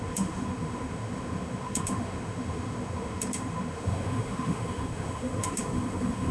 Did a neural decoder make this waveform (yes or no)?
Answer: yes